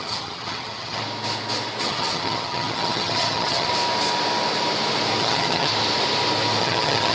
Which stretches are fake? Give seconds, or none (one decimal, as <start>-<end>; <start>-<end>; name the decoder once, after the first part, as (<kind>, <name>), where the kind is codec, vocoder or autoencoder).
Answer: 0.0-1.0 (vocoder, HiFi-GAN); 1.8-3.7; 5.2-5.7; 6.6-7.1